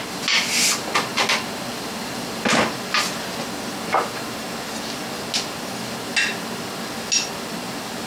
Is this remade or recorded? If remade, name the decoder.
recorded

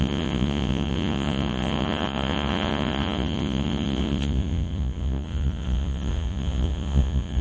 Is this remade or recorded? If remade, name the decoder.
remade, vocoder, Vocos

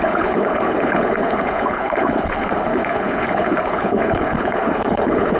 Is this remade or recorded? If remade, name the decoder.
remade, codec, HILCodec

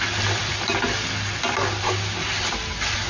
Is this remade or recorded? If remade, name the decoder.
recorded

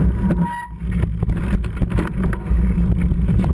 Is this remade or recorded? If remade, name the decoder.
recorded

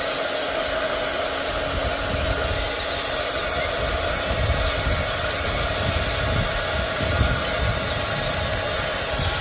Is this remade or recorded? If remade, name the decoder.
recorded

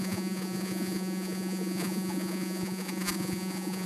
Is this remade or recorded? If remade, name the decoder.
remade, vocoder, Vocos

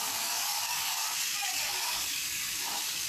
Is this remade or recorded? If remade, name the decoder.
remade, codec, DAC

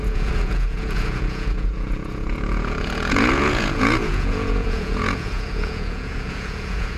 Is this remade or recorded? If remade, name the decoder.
remade, vocoder, Vocos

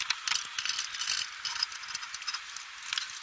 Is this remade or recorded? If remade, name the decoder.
recorded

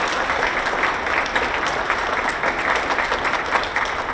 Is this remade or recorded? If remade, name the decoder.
recorded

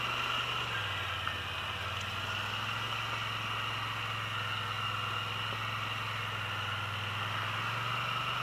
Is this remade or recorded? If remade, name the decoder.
recorded